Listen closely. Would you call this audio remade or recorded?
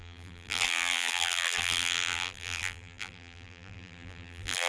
remade